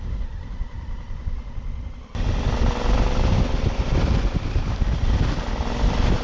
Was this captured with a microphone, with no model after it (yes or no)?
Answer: yes